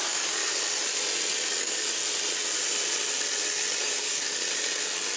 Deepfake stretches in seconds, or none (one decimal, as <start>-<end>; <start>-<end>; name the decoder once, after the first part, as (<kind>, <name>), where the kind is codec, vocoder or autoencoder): 0.0-0.4 (codec, DAC); 1.6-2.0; 3.8-4.4